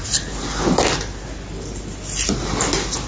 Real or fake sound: real